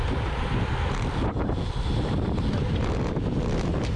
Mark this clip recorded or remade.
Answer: recorded